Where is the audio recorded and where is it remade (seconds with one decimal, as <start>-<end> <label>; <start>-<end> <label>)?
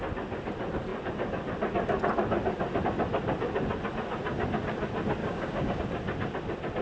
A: 0.0-5.2 recorded; 5.2-5.8 remade; 5.8-6.8 recorded